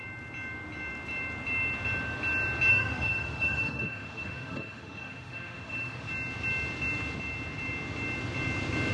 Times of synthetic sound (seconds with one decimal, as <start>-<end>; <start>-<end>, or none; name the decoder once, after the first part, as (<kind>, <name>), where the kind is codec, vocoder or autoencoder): 2.7-6.1 (autoencoder, DAC-VAE)